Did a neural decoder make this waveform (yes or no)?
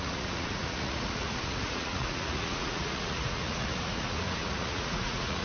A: yes